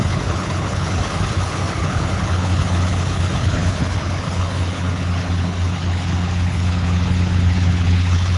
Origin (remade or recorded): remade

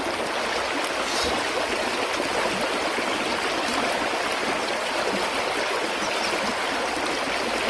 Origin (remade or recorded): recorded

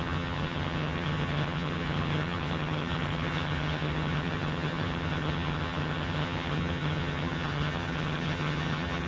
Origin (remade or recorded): remade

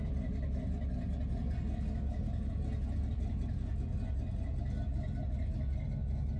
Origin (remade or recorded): recorded